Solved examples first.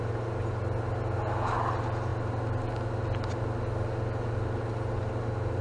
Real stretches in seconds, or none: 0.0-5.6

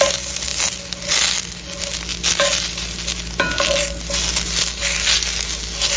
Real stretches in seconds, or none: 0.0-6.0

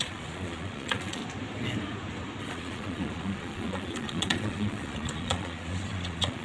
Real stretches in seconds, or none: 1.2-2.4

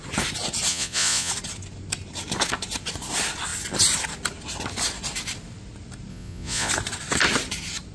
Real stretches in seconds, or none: 0.0-0.7; 1.3-6.1; 6.7-7.9

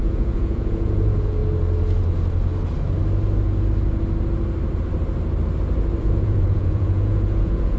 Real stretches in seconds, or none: 1.4-6.0

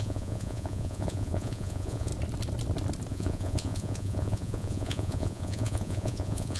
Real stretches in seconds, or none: 2.1-3.1

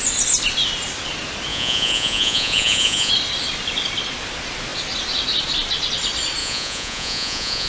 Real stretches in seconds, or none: 0.0-1.5; 3.1-6.4

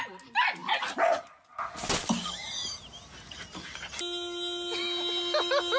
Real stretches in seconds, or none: 0.0-5.8